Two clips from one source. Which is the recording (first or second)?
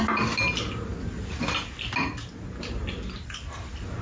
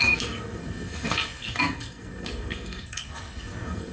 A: first